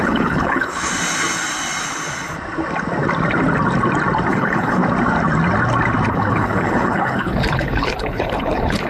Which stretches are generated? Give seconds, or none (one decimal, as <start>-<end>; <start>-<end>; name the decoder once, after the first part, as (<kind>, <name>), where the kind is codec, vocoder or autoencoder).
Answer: 0.0-0.9 (codec, HILCodec); 4.3-4.8; 6.1-8.9